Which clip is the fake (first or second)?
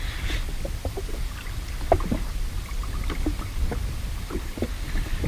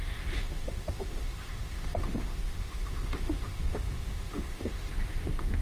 second